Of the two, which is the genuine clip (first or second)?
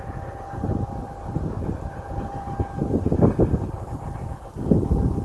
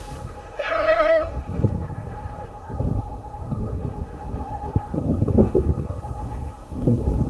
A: first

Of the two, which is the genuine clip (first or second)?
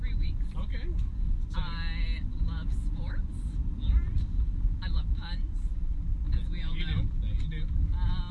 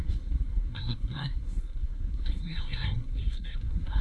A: first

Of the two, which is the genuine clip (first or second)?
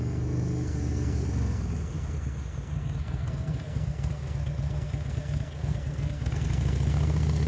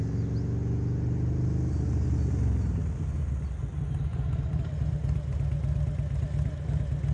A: second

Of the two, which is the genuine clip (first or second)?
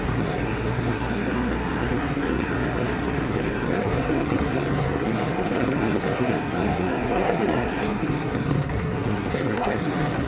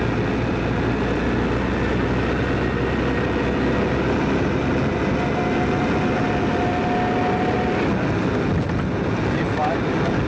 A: second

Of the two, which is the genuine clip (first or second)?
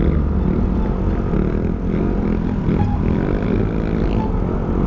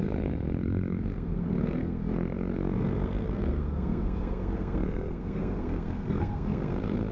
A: first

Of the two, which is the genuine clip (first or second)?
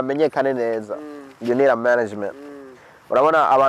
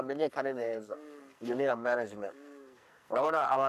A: first